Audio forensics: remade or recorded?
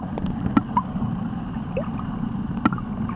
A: recorded